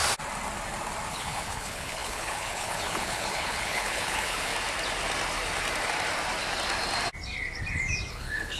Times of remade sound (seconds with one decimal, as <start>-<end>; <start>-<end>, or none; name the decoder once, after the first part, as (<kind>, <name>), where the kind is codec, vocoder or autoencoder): 1.1-4.5 (codec, HILCodec); 8.1-8.6